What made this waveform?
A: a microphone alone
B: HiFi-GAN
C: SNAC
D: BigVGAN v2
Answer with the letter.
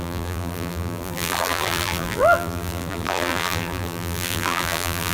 D